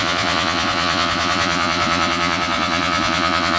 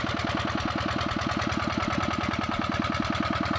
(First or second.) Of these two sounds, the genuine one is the second